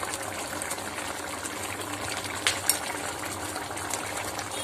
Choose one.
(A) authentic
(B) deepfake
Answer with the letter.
A